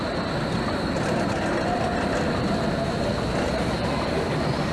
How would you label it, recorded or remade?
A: recorded